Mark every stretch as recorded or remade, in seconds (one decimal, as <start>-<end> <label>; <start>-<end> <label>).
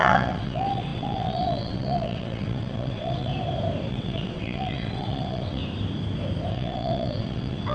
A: 0.0-3.3 remade; 3.3-3.9 recorded; 3.9-5.6 remade; 5.6-6.5 recorded; 6.5-7.7 remade